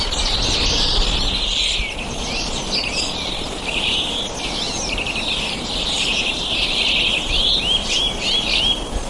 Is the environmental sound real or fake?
real